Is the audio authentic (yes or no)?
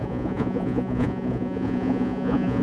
no